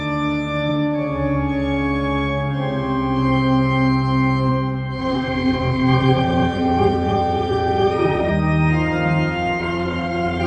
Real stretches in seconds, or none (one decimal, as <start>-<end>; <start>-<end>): 0.0-5.0; 8.3-9.6